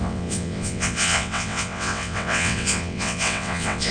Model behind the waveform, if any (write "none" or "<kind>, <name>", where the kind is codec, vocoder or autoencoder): vocoder, WaveNeXt